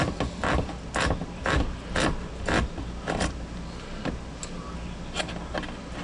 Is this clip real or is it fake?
real